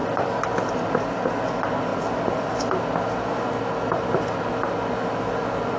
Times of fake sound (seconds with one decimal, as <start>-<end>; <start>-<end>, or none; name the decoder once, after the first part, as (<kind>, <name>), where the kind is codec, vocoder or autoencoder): 0.0-1.0 (vocoder, BigVGAN v2); 1.9-4.5